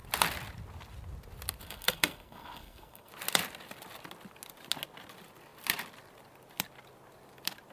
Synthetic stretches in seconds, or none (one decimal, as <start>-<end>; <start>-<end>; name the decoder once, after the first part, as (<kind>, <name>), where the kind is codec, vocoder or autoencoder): 1.6-3.1 (codec, SNAC)

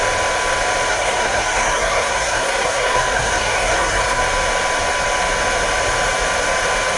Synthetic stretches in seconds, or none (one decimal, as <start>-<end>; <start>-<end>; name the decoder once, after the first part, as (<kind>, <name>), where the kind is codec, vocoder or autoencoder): 0.9-4.2 (codec, SNAC)